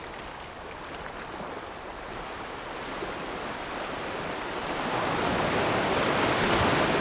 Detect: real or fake real